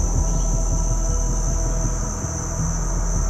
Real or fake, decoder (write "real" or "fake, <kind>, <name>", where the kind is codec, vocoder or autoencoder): real